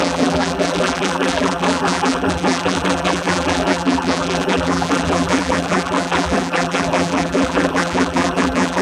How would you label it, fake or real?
fake